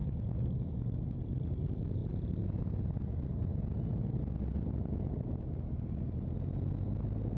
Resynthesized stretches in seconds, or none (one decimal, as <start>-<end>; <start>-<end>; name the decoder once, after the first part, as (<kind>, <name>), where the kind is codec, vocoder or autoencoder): 0.0-1.2 (codec, DAC)